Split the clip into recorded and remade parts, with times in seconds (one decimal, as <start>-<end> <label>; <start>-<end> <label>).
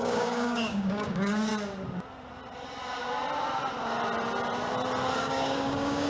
0.0-1.5 remade; 1.5-5.2 recorded; 5.2-6.1 remade